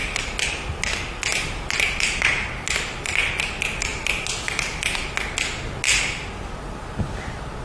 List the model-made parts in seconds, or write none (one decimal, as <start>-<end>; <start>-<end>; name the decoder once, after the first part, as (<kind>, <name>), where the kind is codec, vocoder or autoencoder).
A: 1.3-2.5 (vocoder, BigVGAN v2)